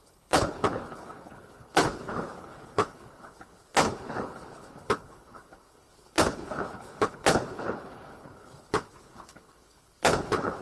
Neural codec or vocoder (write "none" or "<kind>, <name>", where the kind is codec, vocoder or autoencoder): codec, HILCodec